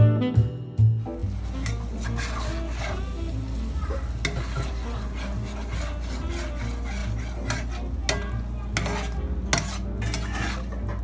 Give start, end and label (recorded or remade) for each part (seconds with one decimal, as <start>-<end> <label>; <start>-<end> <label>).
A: 0.0-11.0 recorded